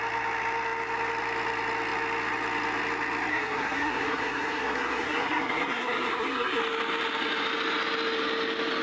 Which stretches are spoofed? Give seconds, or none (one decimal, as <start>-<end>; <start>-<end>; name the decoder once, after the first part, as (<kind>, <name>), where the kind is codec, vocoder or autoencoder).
3.3-6.6 (codec, SNAC)

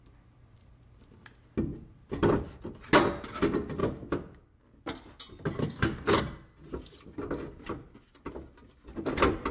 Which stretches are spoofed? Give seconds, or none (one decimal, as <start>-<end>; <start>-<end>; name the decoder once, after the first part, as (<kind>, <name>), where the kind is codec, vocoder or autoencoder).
5.6-6.2 (codec, DAC)

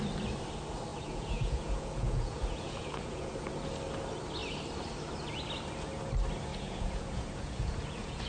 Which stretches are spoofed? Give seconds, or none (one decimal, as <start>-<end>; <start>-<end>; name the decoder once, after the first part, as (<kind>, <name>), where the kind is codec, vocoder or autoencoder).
0.9-3.3 (vocoder, Vocos); 6.5-8.3